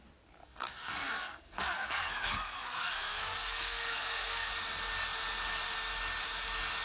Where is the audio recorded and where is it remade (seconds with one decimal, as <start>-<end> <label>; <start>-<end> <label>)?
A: 0.0-0.4 recorded; 0.4-4.5 remade; 4.5-6.8 recorded